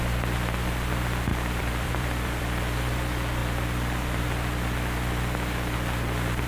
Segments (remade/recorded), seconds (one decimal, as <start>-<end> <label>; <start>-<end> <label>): 0.0-1.3 recorded; 1.3-2.6 remade; 2.6-6.5 recorded